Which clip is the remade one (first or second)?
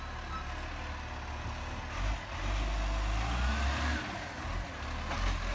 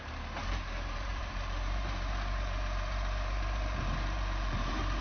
second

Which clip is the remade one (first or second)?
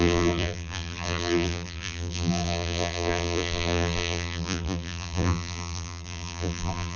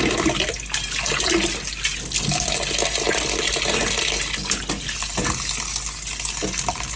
first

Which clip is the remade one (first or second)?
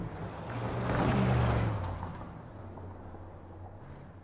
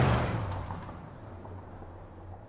second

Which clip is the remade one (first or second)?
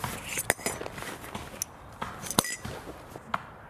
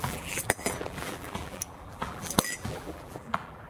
second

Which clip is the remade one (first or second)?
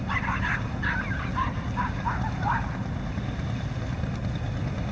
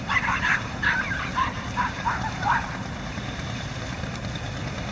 second